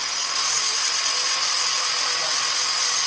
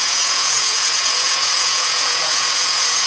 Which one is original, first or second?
first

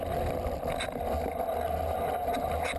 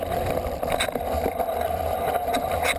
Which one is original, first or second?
first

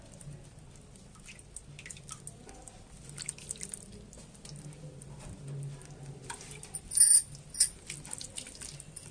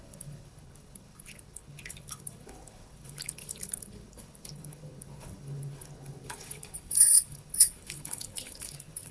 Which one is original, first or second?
first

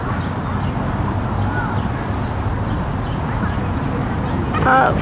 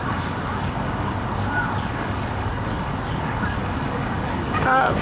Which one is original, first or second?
first